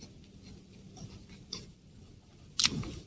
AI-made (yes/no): no